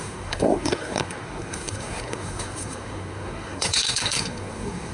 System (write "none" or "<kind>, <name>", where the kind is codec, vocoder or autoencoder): codec, SNAC